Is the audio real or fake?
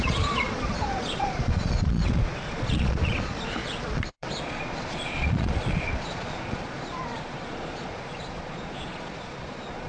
fake